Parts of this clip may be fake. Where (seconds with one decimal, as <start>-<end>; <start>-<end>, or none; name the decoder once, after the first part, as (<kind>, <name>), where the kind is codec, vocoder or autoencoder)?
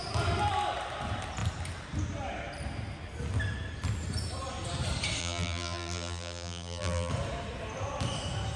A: 5.2-7.1 (vocoder, BigVGAN v2)